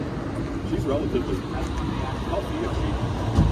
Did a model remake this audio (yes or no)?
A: no